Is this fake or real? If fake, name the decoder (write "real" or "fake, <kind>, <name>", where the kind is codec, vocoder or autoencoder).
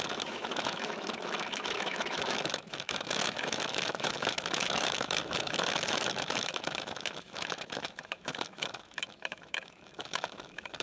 fake, autoencoder, DAC-VAE